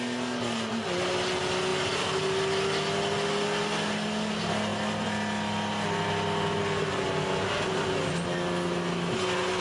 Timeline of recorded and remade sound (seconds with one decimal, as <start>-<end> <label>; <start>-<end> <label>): 0.0-9.6 recorded